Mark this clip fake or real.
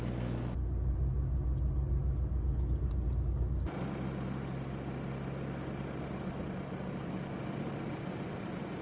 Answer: real